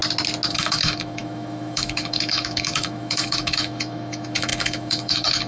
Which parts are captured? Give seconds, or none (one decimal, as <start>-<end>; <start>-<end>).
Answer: 0.0-0.5